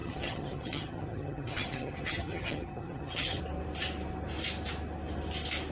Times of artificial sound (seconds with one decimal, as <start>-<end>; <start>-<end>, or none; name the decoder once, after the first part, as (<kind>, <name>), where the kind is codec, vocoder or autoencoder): 0.0-3.4 (vocoder, HiFi-GAN)